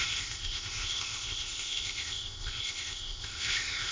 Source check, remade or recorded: remade